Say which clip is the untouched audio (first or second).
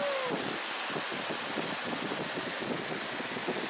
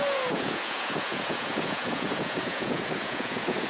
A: first